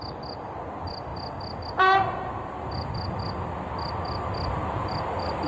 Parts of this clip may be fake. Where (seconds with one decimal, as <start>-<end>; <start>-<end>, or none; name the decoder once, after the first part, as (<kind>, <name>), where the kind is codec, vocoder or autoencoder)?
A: none